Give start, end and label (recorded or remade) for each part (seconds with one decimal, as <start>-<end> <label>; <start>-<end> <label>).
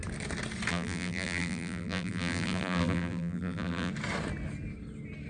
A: 0.0-0.7 recorded; 0.7-3.9 remade; 3.9-5.3 recorded